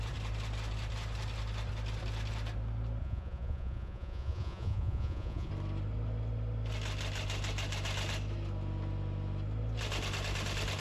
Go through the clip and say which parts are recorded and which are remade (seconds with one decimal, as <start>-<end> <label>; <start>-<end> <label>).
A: 0.0-3.0 recorded; 3.0-5.5 remade; 5.5-10.8 recorded